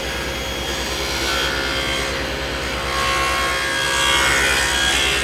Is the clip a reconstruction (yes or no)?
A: no